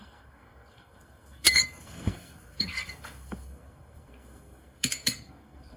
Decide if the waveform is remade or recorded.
remade